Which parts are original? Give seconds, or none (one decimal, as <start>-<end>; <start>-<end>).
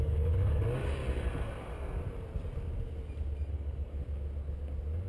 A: 1.0-3.5; 4.0-5.1